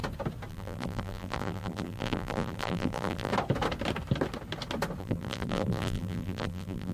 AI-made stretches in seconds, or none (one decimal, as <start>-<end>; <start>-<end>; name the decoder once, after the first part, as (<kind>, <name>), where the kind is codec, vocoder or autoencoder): 0.5-3.3 (vocoder, BigVGAN v2); 5.0-6.9